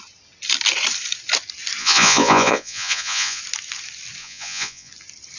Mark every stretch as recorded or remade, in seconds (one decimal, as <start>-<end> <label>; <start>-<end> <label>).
0.0-1.8 recorded; 1.8-3.4 remade; 3.4-4.2 recorded; 4.2-4.9 remade; 4.9-5.4 recorded